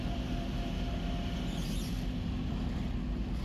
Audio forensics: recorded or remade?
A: recorded